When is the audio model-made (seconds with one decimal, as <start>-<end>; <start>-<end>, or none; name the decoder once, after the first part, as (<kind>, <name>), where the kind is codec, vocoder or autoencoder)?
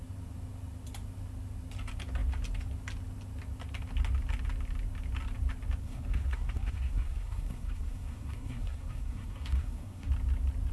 5.8-10.1 (codec, SNAC)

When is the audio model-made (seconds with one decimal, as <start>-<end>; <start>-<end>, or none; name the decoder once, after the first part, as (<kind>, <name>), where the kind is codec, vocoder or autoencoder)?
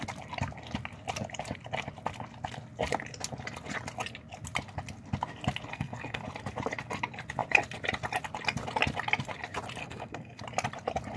5.7-6.2 (codec, SNAC); 9.8-10.4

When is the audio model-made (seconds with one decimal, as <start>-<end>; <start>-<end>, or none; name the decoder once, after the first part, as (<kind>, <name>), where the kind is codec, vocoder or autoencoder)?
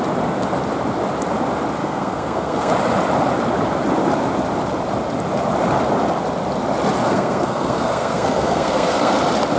1.8-2.7 (codec, SNAC); 7.0-9.1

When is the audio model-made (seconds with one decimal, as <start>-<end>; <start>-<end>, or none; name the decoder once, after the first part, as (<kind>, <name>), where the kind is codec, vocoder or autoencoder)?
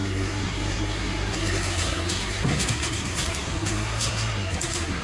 0.0-5.0 (codec, SNAC)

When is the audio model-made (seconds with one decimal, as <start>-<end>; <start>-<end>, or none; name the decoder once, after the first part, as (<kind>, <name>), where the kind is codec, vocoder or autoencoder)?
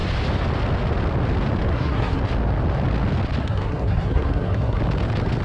1.7-2.2 (codec, SNAC); 3.4-4.8